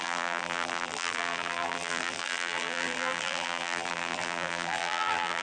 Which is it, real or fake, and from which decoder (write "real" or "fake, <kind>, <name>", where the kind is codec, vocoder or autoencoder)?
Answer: fake, vocoder, BigVGAN v2